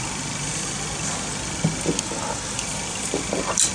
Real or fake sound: real